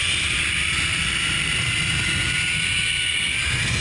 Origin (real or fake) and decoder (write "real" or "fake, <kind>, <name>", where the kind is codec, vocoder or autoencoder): real